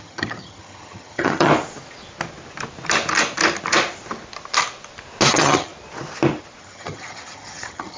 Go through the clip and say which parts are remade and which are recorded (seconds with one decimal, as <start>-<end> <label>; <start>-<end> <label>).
0.0-1.5 remade; 1.5-5.3 recorded; 5.3-5.7 remade; 5.7-6.6 recorded; 6.6-8.0 remade